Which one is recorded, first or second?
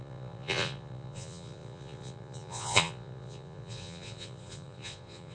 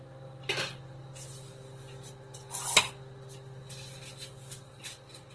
second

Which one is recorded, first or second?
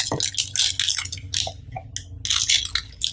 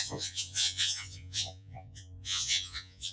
first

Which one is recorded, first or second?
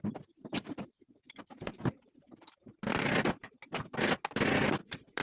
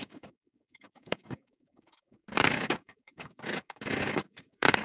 first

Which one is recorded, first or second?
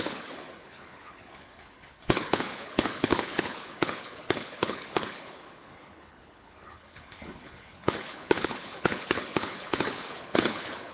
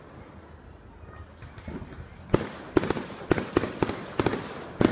second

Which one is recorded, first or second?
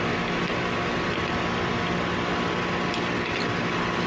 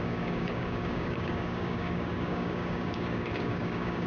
first